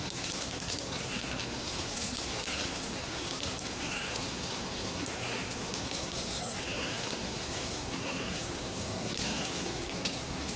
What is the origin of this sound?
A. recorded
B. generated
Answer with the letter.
B